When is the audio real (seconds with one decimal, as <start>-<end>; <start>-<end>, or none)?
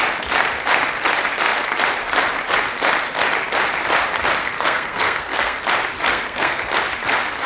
0.0-4.4; 5.6-6.1; 6.7-7.5